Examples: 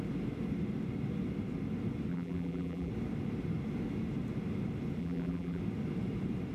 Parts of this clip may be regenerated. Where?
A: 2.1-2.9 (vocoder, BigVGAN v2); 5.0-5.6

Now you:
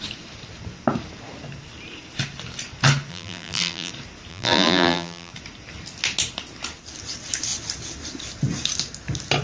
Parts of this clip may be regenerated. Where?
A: 3.1-3.9 (vocoder, BigVGAN v2); 4.3-5.3